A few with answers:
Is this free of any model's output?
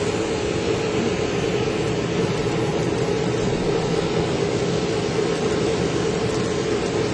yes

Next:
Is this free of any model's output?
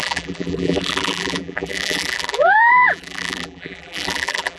no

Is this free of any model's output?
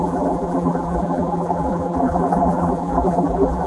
no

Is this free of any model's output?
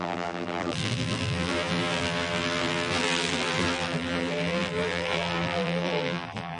no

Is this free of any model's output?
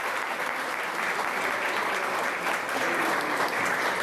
yes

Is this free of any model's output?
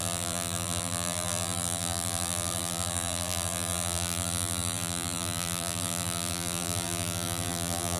no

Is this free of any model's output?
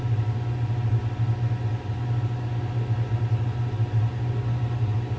yes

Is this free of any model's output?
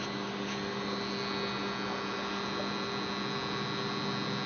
yes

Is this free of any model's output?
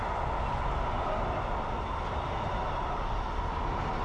yes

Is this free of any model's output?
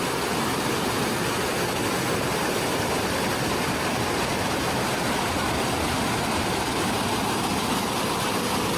yes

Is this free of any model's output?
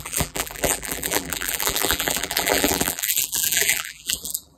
no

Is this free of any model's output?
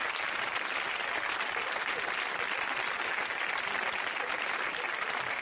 yes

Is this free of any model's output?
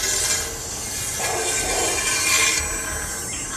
yes